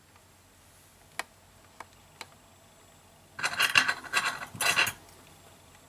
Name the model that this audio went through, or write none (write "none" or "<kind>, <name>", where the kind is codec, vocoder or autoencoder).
none